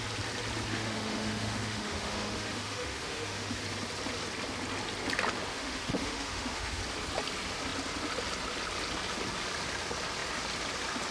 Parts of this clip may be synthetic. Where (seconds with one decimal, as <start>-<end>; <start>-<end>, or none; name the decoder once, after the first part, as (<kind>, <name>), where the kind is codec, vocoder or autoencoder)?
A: 0.7-3.6 (autoencoder, DAC-VAE); 5.5-6.8